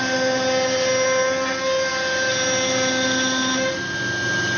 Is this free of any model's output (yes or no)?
yes